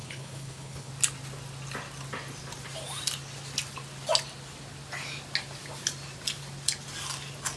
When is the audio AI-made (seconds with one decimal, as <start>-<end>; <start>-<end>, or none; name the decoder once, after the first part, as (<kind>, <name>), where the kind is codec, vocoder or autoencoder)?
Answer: 0.0-0.9 (codec, HILCodec)